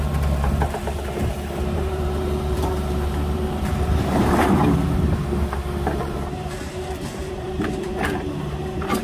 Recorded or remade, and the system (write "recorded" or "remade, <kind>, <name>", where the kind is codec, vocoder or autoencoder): remade, vocoder, BigVGAN v2